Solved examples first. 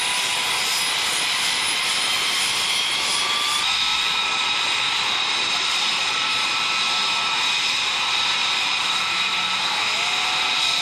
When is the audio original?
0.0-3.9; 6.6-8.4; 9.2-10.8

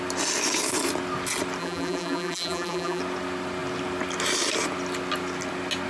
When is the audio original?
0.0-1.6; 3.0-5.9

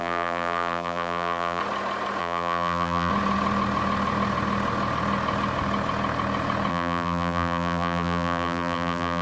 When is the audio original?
1.6-2.2; 3.1-6.7

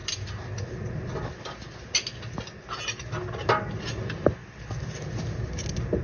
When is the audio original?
0.0-6.0

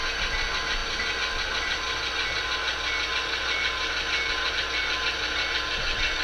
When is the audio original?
0.0-6.2